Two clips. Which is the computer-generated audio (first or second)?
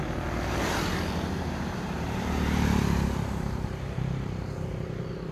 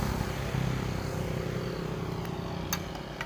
first